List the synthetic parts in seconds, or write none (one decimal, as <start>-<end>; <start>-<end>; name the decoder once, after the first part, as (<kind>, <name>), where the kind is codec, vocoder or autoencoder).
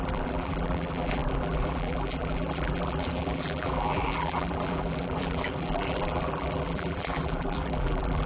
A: 0.0-8.3 (vocoder, BigVGAN v2)